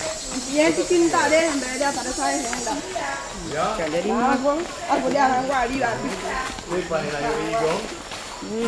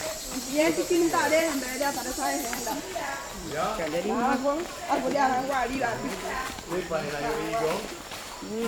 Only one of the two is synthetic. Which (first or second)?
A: second